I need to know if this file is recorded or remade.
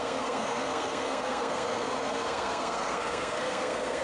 remade